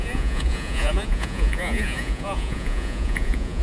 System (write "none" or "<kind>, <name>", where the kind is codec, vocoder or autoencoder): vocoder, Vocos